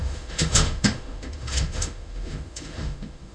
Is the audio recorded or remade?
remade